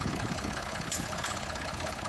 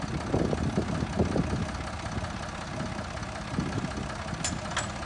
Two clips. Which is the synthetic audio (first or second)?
first